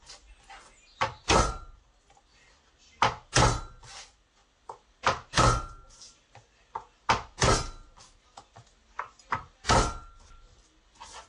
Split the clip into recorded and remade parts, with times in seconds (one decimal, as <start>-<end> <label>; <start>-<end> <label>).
0.0-11.3 recorded